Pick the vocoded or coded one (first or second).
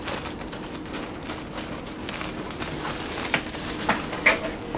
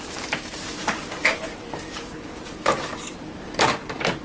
second